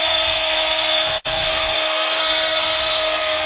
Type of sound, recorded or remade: remade